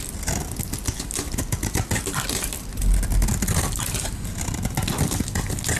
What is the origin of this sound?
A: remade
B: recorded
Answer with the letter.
B